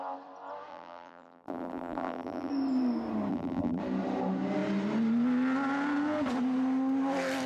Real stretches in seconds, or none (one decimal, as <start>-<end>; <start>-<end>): 0.0-0.7; 2.5-3.3; 3.8-7.5